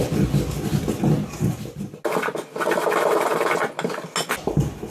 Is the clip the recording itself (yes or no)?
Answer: yes